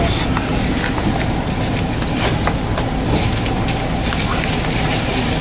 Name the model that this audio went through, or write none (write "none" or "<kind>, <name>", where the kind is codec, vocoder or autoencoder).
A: none